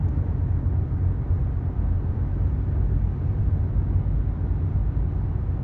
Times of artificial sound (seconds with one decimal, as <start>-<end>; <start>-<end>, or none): none